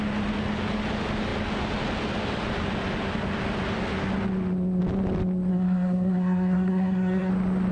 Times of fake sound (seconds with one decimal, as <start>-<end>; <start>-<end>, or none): 5.5-7.3